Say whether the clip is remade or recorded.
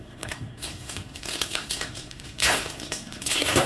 remade